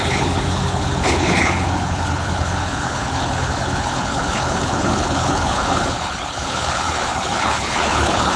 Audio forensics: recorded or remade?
remade